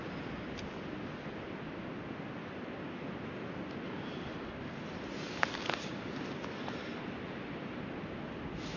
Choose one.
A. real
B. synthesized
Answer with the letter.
A